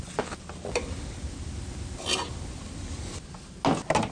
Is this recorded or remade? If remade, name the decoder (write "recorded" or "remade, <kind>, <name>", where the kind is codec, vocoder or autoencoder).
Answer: recorded